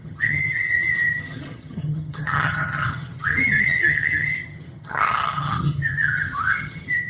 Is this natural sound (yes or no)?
no